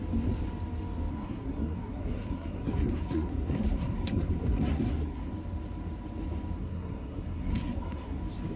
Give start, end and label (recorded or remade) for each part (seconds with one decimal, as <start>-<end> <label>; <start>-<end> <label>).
0.0-1.1 recorded; 1.1-5.3 remade; 5.3-6.6 recorded; 6.6-8.2 remade; 8.2-8.6 recorded

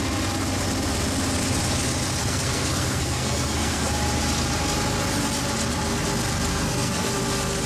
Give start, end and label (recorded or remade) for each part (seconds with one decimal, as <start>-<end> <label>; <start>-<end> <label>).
0.0-2.2 recorded; 2.2-3.9 remade; 3.9-6.5 recorded; 6.5-7.1 remade; 7.1-7.7 recorded

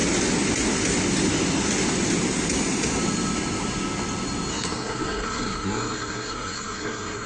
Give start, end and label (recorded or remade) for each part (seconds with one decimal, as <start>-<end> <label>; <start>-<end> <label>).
0.0-4.5 recorded; 4.5-7.3 remade

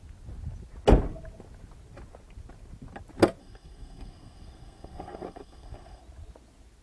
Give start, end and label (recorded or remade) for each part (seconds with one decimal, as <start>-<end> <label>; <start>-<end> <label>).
0.0-3.4 recorded; 3.4-6.0 remade; 6.0-6.8 recorded